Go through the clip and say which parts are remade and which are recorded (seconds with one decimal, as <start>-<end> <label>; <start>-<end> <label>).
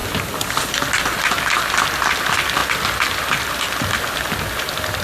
0.0-5.0 recorded